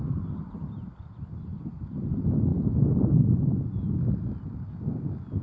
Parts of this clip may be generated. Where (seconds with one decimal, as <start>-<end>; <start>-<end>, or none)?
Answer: none